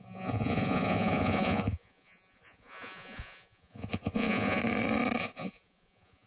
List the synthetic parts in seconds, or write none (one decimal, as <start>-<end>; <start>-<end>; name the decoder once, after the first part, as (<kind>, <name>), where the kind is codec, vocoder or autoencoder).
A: 0.0-4.6 (vocoder, Vocos); 5.2-6.3